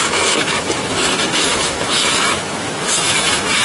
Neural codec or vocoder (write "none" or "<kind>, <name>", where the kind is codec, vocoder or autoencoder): autoencoder, DAC-VAE